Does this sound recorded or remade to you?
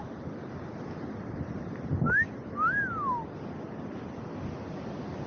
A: recorded